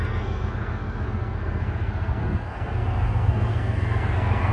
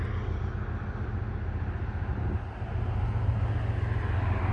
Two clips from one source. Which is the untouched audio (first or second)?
second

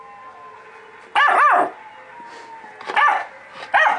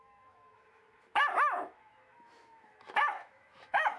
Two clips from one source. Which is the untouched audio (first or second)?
first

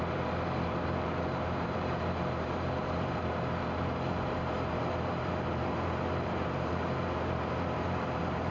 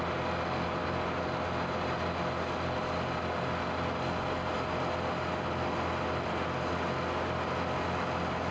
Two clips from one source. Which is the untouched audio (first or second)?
second